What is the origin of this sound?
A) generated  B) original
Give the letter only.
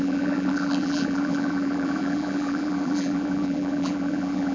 A